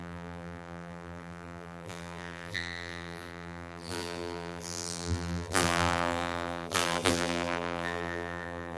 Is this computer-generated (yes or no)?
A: yes